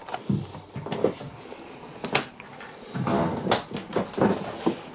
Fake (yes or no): no